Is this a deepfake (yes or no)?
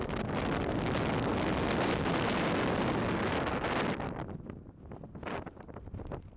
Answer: no